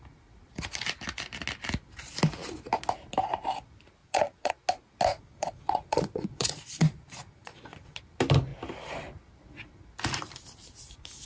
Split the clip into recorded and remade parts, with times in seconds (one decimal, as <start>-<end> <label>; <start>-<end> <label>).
0.0-4.0 recorded; 4.0-4.5 remade; 4.5-5.1 recorded; 5.1-8.0 remade; 8.0-11.3 recorded

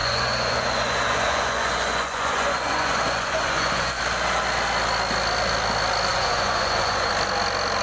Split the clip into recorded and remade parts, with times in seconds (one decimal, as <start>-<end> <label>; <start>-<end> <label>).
0.0-4.0 remade; 4.0-6.1 recorded; 6.1-7.1 remade; 7.1-7.8 recorded

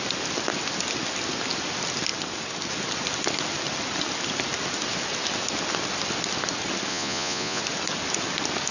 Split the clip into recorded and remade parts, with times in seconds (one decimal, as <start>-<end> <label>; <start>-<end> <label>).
0.0-6.9 recorded; 6.9-7.6 remade; 7.6-8.7 recorded

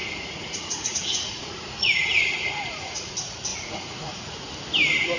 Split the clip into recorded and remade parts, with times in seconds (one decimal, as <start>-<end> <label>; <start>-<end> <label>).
0.0-3.1 remade; 3.1-3.5 recorded; 3.5-4.5 remade; 4.5-5.2 recorded

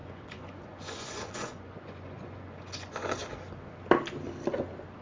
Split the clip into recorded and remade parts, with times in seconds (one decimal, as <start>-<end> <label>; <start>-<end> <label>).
0.0-3.2 remade; 3.2-5.0 recorded

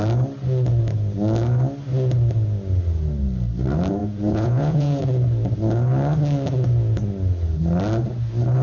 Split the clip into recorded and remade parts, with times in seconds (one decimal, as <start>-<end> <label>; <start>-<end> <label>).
0.0-4.0 recorded; 4.0-5.0 remade; 5.0-8.6 recorded

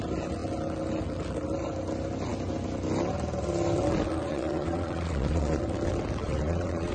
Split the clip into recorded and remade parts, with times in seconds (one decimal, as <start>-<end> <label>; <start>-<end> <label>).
0.0-4.3 recorded; 4.3-5.6 remade; 5.6-6.2 recorded; 6.2-6.9 remade

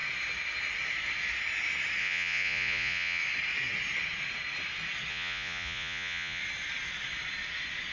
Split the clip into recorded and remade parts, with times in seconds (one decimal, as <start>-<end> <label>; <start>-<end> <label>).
0.0-2.0 recorded; 2.0-3.2 remade; 3.2-5.1 recorded; 5.1-6.4 remade; 6.4-7.9 recorded